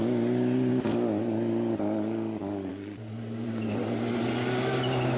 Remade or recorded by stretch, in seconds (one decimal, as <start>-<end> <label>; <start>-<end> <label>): 0.0-5.2 recorded